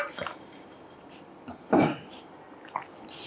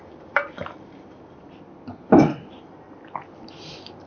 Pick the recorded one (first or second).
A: second